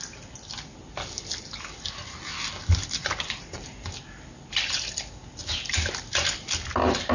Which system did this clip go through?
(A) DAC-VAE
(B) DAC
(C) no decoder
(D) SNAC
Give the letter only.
C